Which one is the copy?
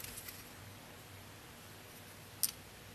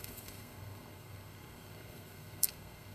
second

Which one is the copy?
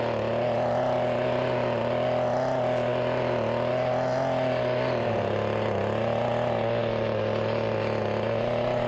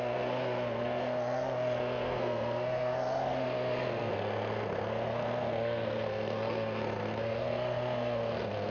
second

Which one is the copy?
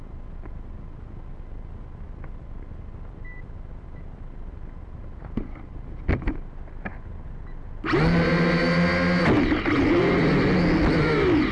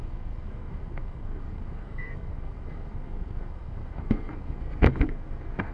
second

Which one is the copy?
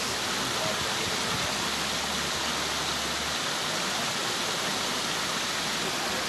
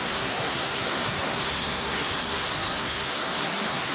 second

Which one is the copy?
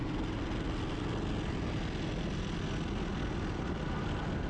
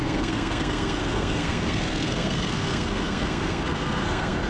second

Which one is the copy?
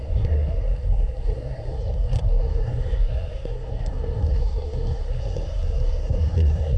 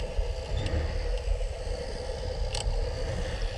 first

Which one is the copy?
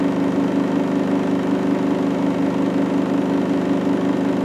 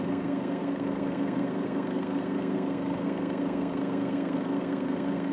second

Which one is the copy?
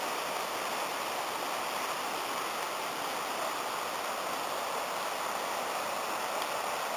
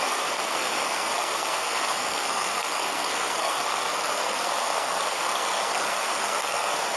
second